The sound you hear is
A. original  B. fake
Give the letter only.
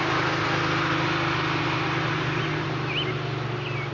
A